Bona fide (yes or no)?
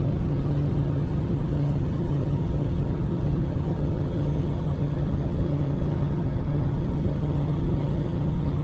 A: no